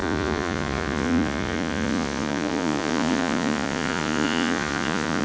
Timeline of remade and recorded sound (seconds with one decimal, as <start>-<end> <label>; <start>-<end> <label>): 0.0-5.2 remade